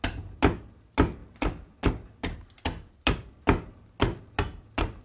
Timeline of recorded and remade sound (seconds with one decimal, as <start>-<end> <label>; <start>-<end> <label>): 0.0-5.0 recorded